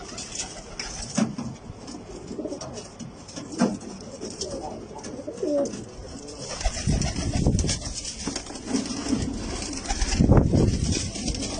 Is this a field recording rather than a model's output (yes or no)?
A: yes